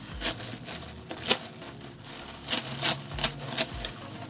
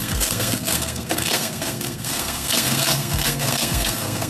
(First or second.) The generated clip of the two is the second